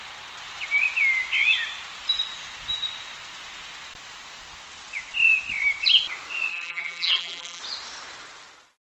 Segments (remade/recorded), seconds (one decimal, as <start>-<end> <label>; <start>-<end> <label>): 0.0-6.5 recorded; 6.5-7.6 remade; 7.6-8.8 recorded